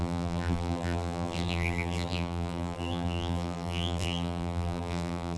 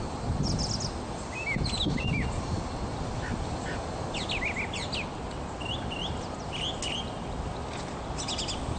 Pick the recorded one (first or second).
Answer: second